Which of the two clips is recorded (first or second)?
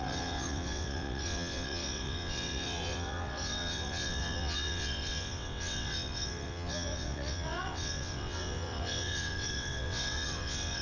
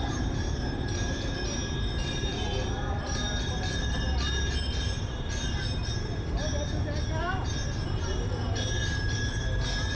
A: second